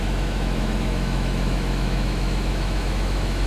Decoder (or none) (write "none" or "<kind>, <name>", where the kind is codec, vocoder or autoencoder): autoencoder, DAC-VAE